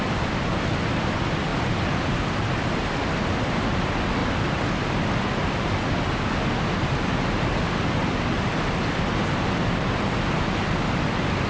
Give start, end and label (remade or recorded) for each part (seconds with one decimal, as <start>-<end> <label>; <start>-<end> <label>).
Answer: 0.0-1.5 recorded; 1.5-2.2 remade; 2.2-11.5 recorded